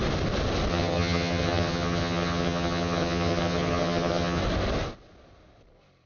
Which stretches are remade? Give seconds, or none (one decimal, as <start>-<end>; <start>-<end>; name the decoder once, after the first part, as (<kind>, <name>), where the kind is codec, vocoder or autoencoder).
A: 0.7-4.4 (vocoder, HiFi-GAN)